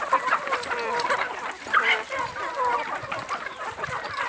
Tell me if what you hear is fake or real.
real